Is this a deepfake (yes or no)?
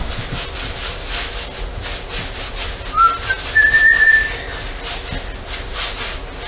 no